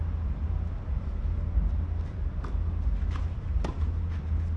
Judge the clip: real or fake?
real